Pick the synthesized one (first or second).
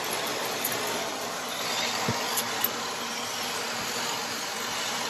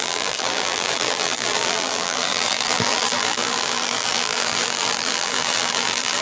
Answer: second